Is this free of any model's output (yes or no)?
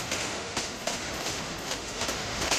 no